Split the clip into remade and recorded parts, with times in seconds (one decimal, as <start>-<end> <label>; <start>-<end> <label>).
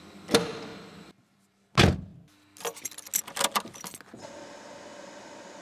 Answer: 0.0-0.7 recorded; 0.7-1.4 remade; 1.4-5.6 recorded